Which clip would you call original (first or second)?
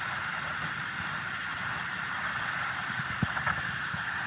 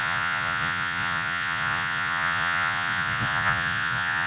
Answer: first